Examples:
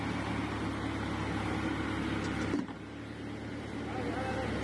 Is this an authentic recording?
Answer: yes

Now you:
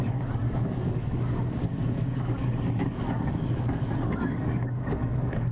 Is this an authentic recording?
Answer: no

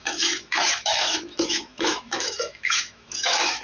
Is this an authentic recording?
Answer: no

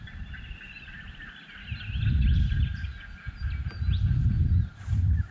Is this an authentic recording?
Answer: yes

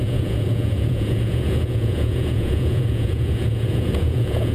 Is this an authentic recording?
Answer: no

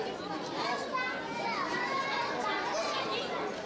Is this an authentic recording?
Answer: yes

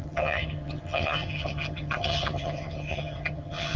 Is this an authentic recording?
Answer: no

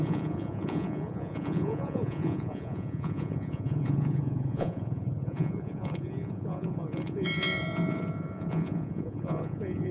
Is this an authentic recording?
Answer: no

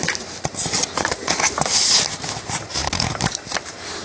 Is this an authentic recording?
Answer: no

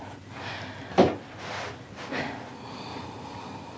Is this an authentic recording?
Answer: yes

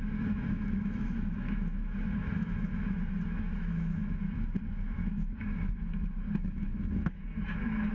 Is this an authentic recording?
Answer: no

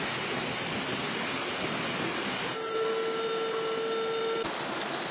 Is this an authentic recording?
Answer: yes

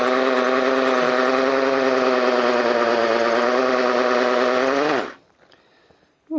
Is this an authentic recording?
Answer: yes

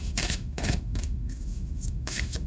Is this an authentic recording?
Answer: no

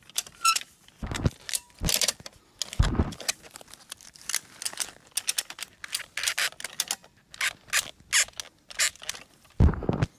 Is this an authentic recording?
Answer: yes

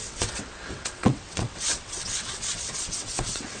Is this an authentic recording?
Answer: no